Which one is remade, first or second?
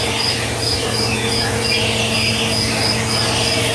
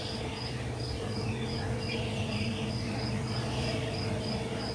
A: second